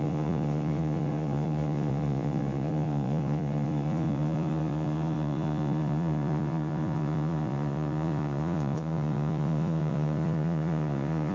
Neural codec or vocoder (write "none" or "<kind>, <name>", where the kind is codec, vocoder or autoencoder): vocoder, Vocos